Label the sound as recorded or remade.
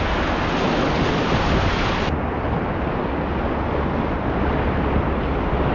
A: recorded